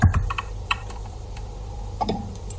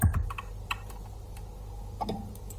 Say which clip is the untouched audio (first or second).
second